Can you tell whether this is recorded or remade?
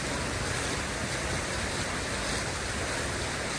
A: recorded